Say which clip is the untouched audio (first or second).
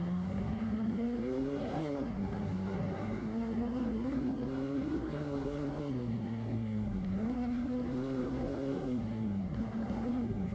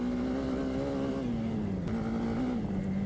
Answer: second